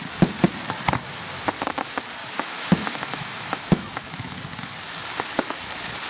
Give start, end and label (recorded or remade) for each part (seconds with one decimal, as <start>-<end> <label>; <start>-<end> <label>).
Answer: 0.0-2.2 recorded; 2.2-4.3 remade; 4.3-6.1 recorded